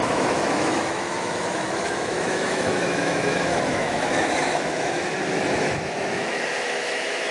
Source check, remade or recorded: remade